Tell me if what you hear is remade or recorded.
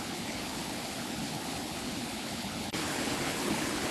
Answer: remade